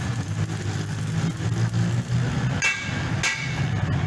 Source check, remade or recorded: recorded